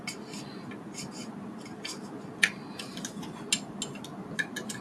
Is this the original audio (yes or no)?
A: yes